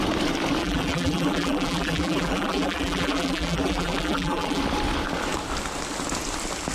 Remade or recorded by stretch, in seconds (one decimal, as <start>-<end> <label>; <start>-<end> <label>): 0.0-0.6 recorded; 0.6-4.6 remade; 4.6-6.7 recorded